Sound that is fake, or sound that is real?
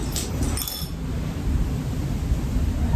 real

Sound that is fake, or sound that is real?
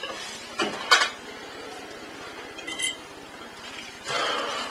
real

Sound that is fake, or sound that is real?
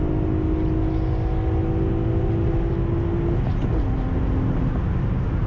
real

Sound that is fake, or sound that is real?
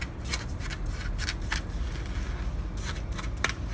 real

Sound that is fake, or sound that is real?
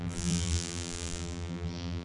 fake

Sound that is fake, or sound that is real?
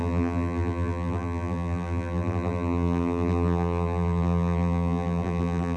fake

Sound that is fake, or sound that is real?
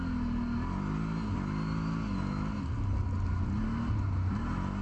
real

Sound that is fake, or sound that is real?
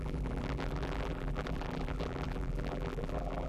fake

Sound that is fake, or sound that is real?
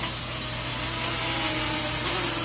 real